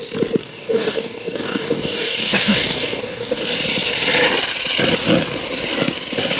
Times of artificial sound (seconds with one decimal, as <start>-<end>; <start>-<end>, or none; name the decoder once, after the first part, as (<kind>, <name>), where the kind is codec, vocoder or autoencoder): 0.4-3.4 (codec, DAC)